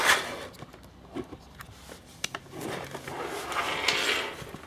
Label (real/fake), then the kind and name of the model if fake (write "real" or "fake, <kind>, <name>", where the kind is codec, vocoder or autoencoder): real